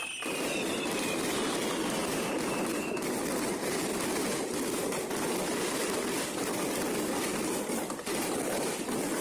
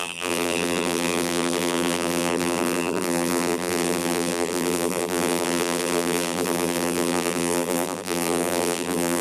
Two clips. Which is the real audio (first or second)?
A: first